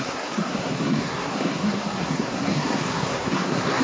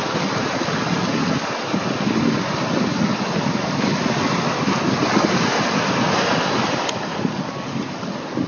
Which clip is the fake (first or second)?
first